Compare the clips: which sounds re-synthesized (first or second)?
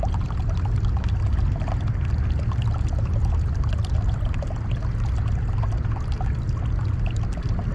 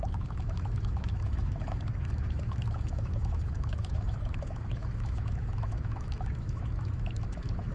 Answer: second